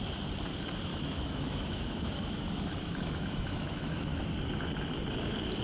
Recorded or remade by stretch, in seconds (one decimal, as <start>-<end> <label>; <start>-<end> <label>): 0.0-0.9 recorded; 0.9-4.3 remade; 4.3-5.6 recorded